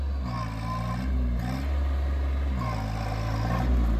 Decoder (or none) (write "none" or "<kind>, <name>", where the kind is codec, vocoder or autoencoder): none